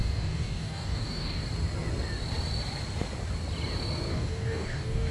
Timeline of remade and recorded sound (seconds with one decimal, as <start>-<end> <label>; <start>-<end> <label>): 0.0-1.4 remade; 1.4-4.1 recorded; 4.1-5.1 remade